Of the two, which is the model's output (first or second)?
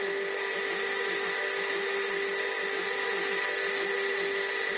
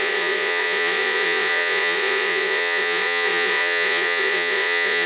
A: second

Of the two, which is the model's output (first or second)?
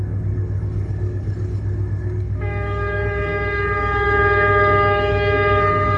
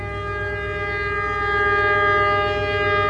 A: first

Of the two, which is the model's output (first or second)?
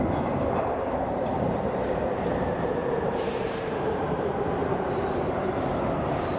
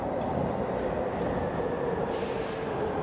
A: first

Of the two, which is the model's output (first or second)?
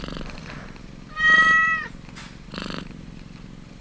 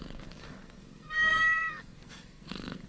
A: second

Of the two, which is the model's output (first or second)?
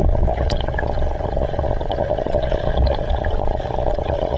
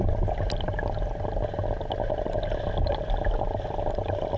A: first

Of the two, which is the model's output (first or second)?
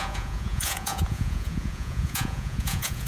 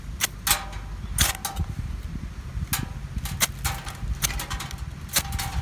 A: first